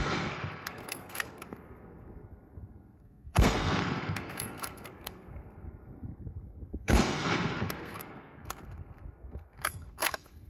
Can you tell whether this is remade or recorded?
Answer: remade